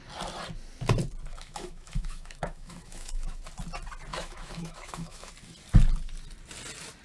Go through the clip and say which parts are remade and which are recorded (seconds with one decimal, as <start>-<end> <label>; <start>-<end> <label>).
0.0-1.3 recorded; 1.3-3.4 remade; 3.4-4.1 recorded; 4.1-5.3 remade; 5.3-7.0 recorded